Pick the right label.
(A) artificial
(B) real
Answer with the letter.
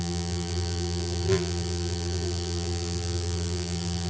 A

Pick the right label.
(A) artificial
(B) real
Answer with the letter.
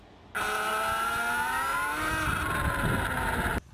B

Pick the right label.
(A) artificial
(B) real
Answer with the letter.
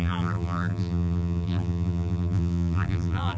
A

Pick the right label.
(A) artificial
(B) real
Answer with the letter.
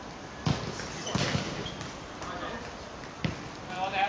B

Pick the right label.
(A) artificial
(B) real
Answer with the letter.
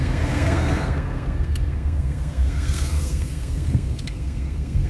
A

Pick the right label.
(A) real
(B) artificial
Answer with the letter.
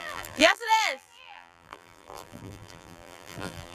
B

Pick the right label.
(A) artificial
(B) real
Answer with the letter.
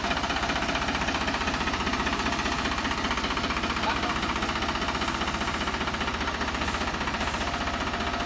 B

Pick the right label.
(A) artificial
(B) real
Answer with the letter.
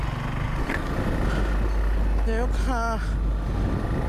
B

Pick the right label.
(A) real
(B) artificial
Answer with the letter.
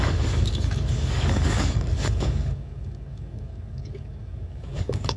B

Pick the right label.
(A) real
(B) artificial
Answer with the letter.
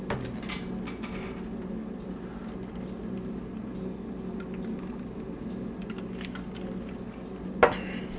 A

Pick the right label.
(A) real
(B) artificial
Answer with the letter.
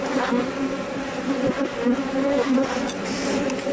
A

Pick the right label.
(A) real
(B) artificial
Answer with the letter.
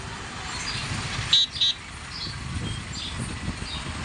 A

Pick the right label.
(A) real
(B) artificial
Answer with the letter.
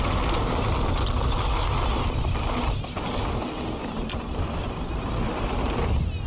A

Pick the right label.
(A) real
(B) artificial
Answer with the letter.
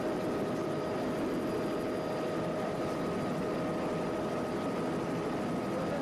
A